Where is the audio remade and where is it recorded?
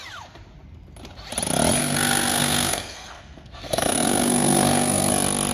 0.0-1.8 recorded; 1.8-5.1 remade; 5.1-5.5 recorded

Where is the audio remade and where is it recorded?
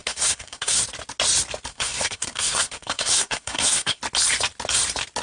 0.0-0.8 remade; 0.8-1.7 recorded; 1.7-4.0 remade; 4.0-5.2 recorded